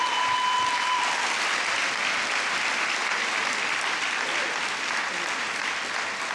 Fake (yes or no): no